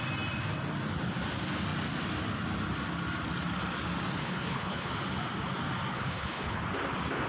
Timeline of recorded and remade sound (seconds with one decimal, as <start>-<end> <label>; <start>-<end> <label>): 0.0-4.2 recorded; 4.2-4.9 remade; 4.9-5.9 recorded; 5.9-6.6 remade; 6.6-7.3 recorded